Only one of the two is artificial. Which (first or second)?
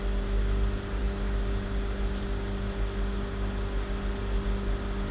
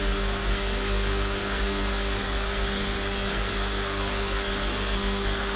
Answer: second